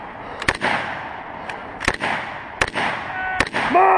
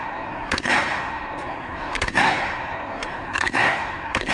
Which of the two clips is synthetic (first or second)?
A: second